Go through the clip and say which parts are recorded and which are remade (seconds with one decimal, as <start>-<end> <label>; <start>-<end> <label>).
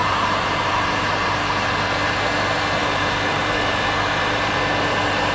0.0-1.3 remade; 1.3-2.8 recorded; 2.8-4.6 remade; 4.6-5.3 recorded